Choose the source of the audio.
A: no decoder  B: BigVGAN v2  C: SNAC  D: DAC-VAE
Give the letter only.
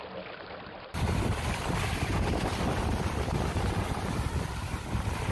B